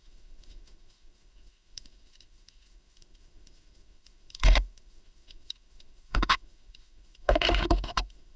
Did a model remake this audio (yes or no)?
yes